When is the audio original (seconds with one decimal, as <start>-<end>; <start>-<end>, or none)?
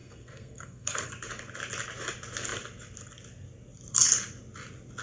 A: 1.1-5.0